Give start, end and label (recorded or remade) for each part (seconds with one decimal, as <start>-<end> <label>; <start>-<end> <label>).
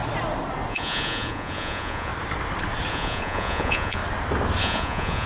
0.0-0.7 recorded; 0.7-2.1 remade; 2.1-2.9 recorded; 2.9-4.0 remade; 4.0-4.6 recorded; 4.6-5.3 remade